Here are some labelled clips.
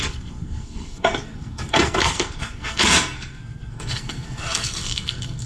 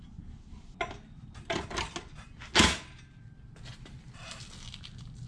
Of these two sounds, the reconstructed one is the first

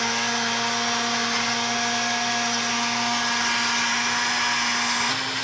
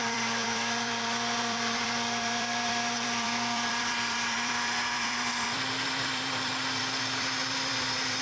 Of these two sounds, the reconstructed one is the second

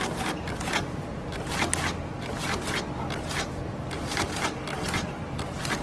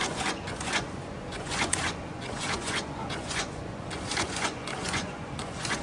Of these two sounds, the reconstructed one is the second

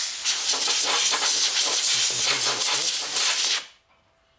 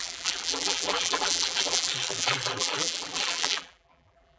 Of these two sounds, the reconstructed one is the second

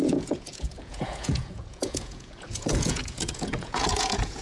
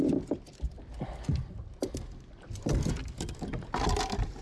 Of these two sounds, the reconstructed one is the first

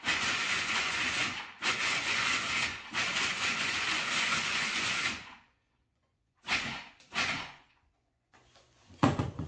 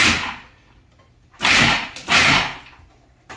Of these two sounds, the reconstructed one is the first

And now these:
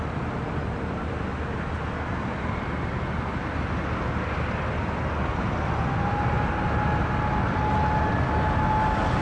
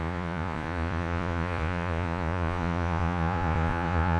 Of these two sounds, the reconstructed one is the second